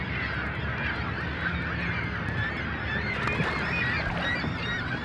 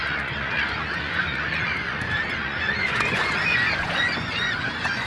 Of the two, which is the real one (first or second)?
first